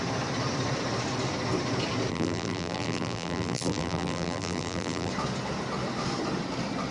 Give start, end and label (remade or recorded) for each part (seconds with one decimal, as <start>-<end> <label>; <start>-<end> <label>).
0.0-2.1 recorded; 2.1-5.1 remade; 5.1-6.9 recorded